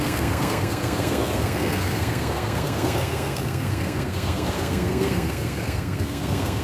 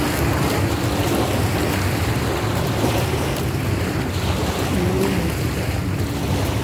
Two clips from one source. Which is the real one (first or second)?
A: second